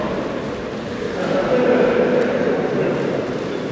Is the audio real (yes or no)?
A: yes